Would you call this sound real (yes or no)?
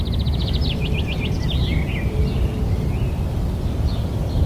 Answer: yes